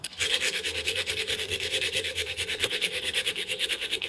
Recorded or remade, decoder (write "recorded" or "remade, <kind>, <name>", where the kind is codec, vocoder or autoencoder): remade, codec, SNAC